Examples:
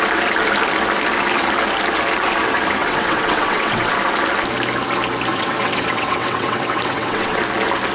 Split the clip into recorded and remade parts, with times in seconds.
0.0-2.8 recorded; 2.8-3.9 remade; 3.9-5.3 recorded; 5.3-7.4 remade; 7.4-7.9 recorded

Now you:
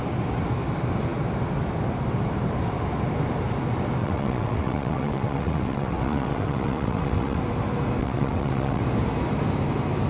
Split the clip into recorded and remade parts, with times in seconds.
0.0-4.0 recorded; 4.0-7.4 remade; 7.4-8.0 recorded; 8.0-8.8 remade; 8.8-10.1 recorded

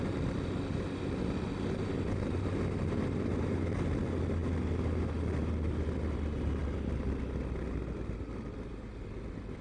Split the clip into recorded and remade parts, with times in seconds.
0.0-9.6 recorded

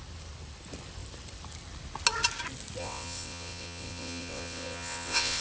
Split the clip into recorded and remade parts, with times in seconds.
0.0-2.8 recorded; 2.8-5.4 remade

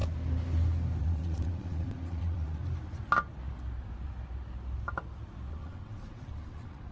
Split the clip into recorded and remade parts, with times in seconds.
0.0-1.0 recorded; 1.0-2.6 remade; 2.6-5.5 recorded; 5.5-6.9 remade

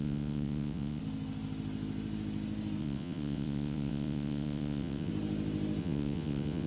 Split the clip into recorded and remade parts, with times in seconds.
0.0-1.0 remade; 1.0-2.8 recorded; 2.8-5.1 remade; 5.1-5.8 recorded; 5.8-6.7 remade

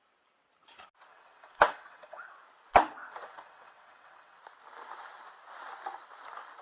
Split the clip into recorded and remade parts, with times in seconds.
0.0-1.1 recorded; 1.1-2.3 remade; 2.3-3.0 recorded; 3.0-4.4 remade; 4.4-6.6 recorded